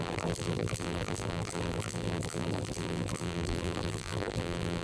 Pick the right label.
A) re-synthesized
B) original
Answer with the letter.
A